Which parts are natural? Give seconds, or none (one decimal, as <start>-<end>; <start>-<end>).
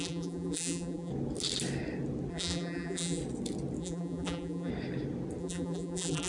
1.1-2.3; 3.2-3.8; 4.7-5.4